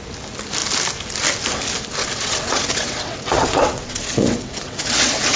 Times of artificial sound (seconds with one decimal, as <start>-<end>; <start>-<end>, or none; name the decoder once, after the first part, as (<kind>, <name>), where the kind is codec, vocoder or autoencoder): 2.0-5.4 (vocoder, WaveNeXt)